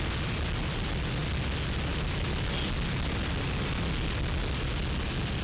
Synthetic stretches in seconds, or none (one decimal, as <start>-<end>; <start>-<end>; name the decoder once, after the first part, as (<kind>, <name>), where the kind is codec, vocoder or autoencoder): none